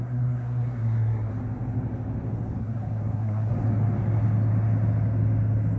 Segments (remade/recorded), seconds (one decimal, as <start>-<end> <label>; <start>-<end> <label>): 0.0-1.3 remade; 1.3-2.6 recorded; 2.6-3.5 remade; 3.5-5.8 recorded

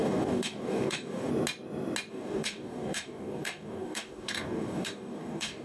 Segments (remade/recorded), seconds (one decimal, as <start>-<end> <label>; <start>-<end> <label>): 0.0-1.3 remade; 1.3-2.1 recorded; 2.1-5.6 remade

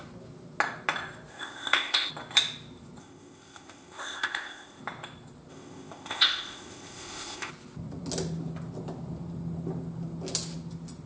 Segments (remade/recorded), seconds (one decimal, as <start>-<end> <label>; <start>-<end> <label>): 0.0-1.3 recorded; 1.3-2.1 remade; 2.1-3.0 recorded; 3.0-4.8 remade; 4.8-5.5 recorded; 5.5-7.5 remade; 7.5-11.1 recorded

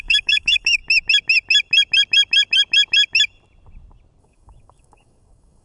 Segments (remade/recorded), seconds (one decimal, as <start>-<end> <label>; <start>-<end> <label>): 0.0-0.8 remade; 0.8-4.2 recorded; 4.2-5.6 remade

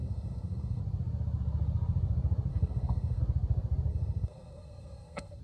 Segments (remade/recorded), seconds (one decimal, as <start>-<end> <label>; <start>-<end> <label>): 0.0-0.8 remade; 0.8-2.5 recorded; 2.5-3.2 remade; 3.2-3.9 recorded; 3.9-5.4 remade

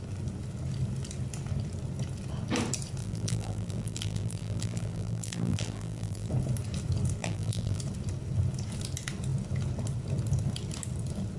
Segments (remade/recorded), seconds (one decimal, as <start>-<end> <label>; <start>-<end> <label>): 0.0-3.0 recorded; 3.0-6.3 remade; 6.3-7.2 recorded; 7.2-7.8 remade; 7.8-11.4 recorded

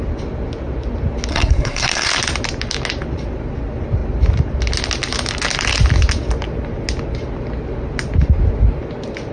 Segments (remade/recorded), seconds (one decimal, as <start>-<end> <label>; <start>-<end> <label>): 0.0-1.3 recorded; 1.3-2.1 remade; 2.1-9.3 recorded